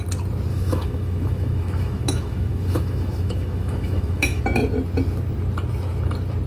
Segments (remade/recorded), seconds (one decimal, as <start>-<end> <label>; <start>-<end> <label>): 0.0-0.5 recorded; 0.5-4.4 remade; 4.4-6.5 recorded